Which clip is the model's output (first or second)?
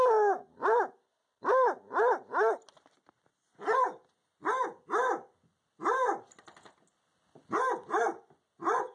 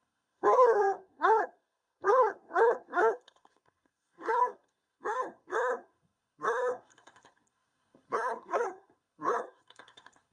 second